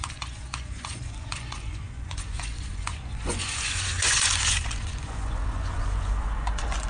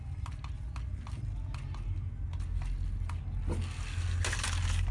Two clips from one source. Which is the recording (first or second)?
second